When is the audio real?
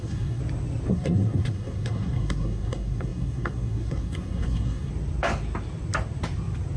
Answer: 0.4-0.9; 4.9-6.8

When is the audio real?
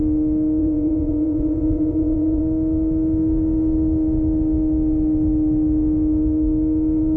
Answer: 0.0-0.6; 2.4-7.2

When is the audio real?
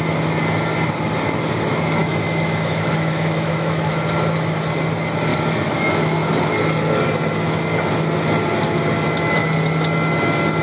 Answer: 0.0-2.0; 3.9-5.3; 6.3-10.6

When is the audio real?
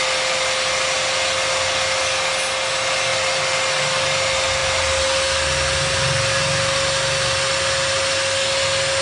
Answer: 0.0-9.0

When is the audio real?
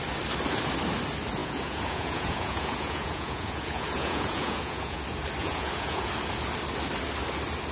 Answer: 0.0-1.4; 5.0-5.4; 6.1-7.7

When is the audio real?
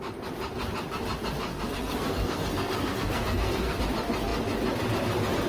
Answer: 0.0-1.5; 3.8-5.5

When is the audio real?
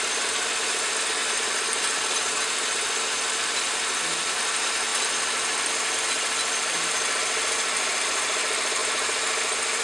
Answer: 0.0-9.8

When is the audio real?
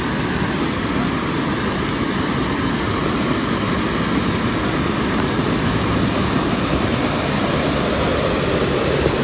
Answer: 0.0-9.2